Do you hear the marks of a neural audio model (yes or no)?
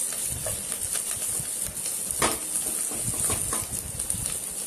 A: no